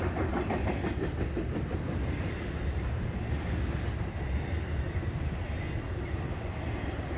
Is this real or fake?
real